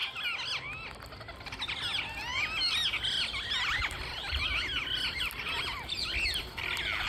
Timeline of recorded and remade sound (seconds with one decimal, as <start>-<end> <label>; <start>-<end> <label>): 0.0-7.1 recorded

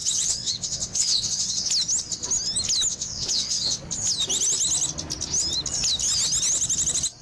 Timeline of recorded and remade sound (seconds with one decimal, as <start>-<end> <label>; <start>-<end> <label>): 0.0-1.7 remade; 1.7-2.9 recorded; 2.9-3.8 remade; 3.8-7.2 recorded

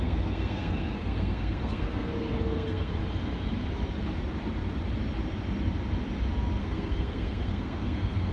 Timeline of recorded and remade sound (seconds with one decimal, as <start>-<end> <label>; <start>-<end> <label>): 0.0-3.0 remade; 3.0-6.6 recorded; 6.6-8.3 remade

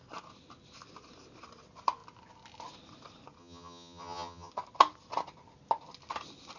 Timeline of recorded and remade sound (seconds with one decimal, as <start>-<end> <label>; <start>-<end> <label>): 0.0-3.4 recorded; 3.4-4.5 remade; 4.5-6.6 recorded

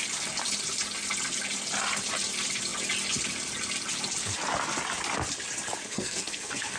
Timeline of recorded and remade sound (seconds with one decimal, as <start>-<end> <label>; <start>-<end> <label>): 0.0-5.8 recorded; 5.8-6.8 remade

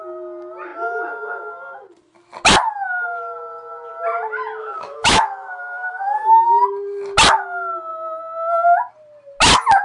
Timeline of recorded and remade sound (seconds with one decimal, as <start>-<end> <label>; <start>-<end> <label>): 0.0-4.6 recorded; 4.6-6.6 remade; 6.6-9.8 recorded